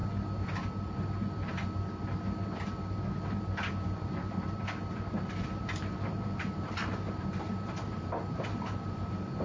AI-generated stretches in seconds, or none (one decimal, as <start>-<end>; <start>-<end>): 5.1-9.4